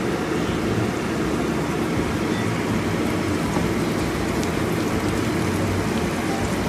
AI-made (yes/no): no